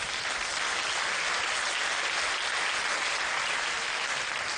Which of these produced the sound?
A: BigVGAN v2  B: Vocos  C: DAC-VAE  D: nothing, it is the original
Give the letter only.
D